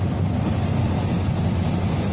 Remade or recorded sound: recorded